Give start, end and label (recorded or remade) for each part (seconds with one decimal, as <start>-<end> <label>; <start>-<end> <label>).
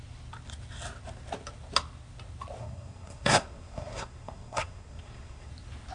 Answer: 0.0-2.6 recorded; 2.6-5.5 remade; 5.5-5.9 recorded